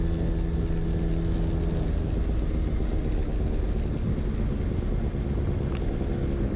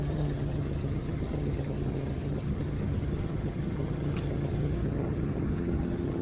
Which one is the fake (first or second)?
second